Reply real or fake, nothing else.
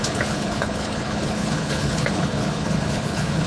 fake